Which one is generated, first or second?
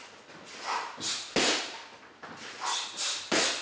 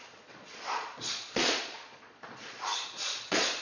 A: second